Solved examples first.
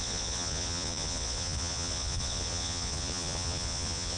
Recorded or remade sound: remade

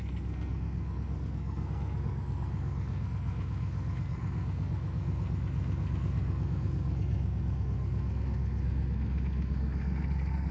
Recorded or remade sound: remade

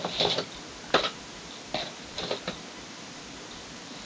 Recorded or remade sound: recorded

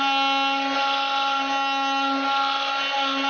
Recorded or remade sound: recorded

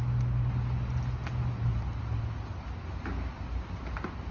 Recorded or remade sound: recorded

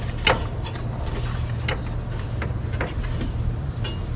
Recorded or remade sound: recorded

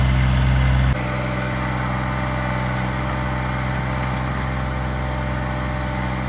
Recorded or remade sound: recorded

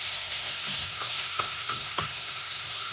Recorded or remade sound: remade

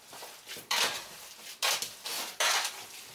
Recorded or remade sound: remade